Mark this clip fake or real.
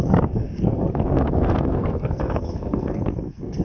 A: fake